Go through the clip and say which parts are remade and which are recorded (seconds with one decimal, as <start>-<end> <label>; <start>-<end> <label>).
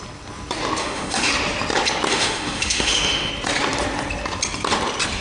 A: 0.0-0.8 recorded; 0.8-1.3 remade; 1.3-2.1 recorded; 2.1-3.3 remade; 3.3-5.2 recorded